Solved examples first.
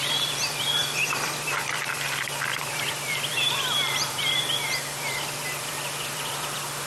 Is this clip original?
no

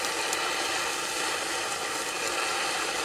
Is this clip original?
yes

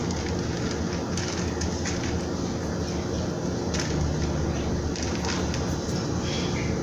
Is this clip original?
yes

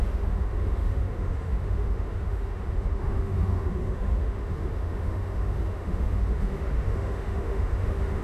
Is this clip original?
no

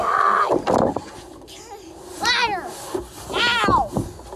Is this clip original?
yes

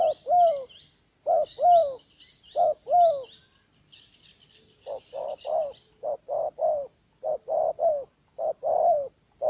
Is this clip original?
yes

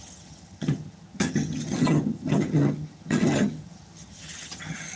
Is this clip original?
no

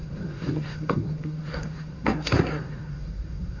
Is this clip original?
no